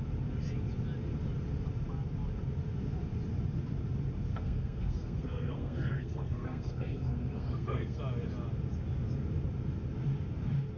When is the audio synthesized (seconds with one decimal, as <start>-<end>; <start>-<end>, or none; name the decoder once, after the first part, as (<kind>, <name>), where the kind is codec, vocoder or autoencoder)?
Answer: 4.3-8.0 (codec, SNAC)